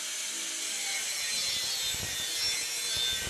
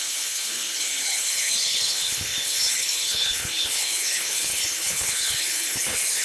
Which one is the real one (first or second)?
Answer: first